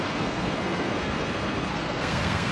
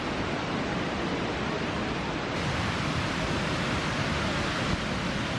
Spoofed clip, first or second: first